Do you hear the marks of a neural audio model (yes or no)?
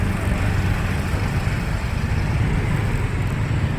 no